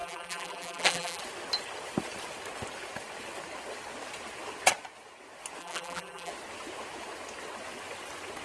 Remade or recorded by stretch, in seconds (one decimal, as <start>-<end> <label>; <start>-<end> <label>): 0.0-1.2 remade; 1.2-5.6 recorded; 5.6-6.3 remade; 6.3-8.4 recorded